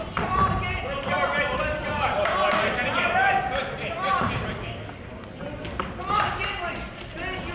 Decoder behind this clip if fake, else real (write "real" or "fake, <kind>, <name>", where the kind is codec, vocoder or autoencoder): real